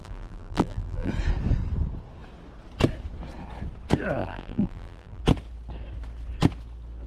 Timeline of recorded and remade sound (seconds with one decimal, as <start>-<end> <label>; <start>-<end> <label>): 0.0-1.1 remade; 1.1-4.2 recorded; 4.2-5.2 remade; 5.2-7.1 recorded